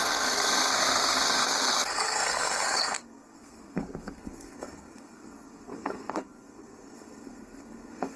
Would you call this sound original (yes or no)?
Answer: no